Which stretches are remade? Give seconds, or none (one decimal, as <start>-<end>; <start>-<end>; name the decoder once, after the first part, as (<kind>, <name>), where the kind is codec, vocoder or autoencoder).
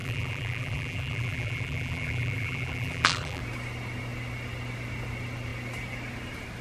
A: 0.0-3.4 (vocoder, BigVGAN v2)